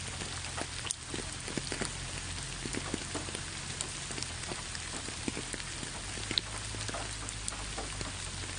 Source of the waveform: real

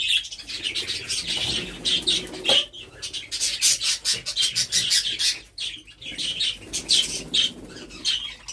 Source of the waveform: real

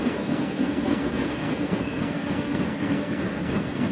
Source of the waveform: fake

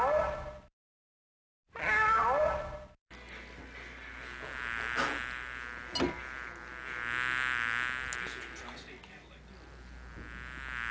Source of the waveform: real